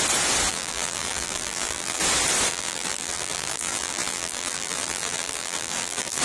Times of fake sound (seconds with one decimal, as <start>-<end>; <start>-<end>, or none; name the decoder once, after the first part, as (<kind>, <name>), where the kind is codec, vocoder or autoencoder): 0.5-2.0 (vocoder, BigVGAN v2); 2.5-6.2